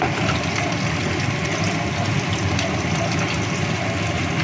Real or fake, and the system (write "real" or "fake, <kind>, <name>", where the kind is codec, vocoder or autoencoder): real